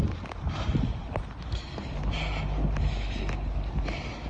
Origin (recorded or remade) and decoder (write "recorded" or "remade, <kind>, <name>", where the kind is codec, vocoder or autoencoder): recorded